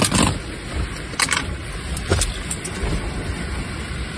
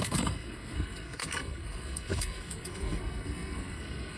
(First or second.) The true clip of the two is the first